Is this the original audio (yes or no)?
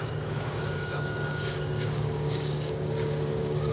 no